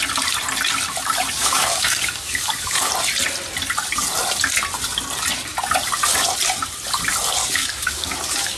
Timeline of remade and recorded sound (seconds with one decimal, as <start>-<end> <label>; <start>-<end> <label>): 0.0-1.4 recorded; 1.4-2.9 remade; 2.9-7.4 recorded; 7.4-8.6 remade